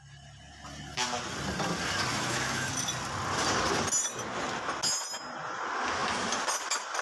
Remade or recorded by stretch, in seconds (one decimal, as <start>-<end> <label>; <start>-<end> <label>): 0.0-2.1 recorded; 2.1-2.7 remade; 2.7-7.0 recorded

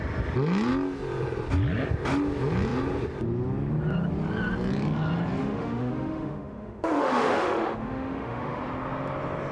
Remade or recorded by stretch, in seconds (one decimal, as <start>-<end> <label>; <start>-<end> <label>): 0.0-5.4 recorded; 5.4-8.6 remade; 8.6-9.5 recorded

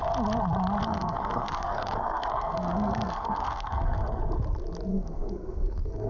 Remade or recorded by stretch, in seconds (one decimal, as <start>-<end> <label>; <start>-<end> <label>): 0.0-0.8 recorded; 0.8-4.2 remade; 4.2-4.9 recorded; 4.9-6.1 remade

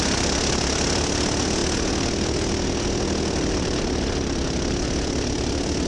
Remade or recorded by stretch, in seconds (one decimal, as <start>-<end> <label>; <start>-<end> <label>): 0.0-5.9 recorded